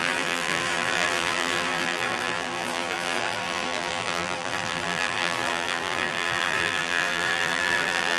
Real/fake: fake